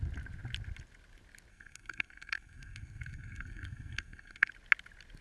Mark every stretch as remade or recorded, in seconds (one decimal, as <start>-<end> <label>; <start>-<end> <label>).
0.0-1.5 recorded; 1.5-4.5 remade; 4.5-5.2 recorded